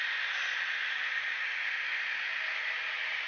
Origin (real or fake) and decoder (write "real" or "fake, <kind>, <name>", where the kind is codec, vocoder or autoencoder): real